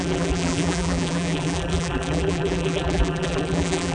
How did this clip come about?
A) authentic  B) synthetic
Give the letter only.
B